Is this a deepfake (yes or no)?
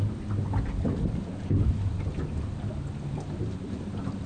no